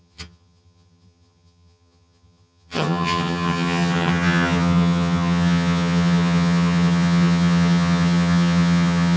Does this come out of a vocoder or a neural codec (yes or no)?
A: yes